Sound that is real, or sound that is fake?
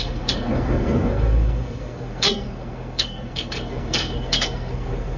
fake